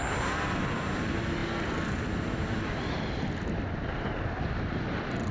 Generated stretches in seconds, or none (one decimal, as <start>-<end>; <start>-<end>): none